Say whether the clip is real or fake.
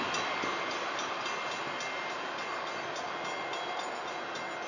real